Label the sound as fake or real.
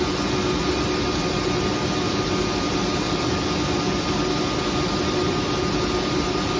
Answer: real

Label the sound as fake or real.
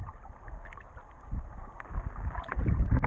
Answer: real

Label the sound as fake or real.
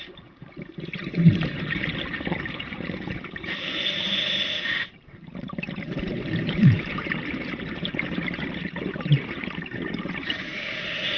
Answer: fake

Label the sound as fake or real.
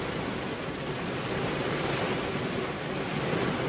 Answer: real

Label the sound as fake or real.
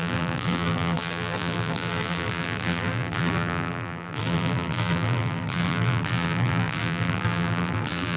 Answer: fake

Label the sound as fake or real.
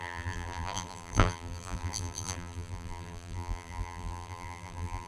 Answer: fake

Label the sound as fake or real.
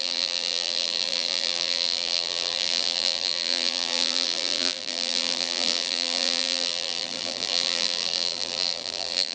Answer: fake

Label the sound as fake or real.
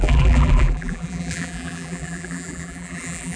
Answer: fake